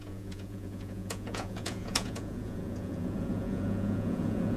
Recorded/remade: remade